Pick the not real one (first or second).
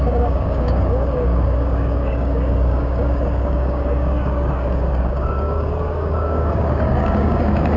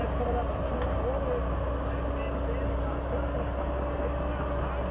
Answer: first